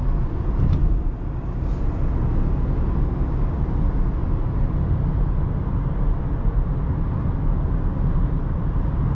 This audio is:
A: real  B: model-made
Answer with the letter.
A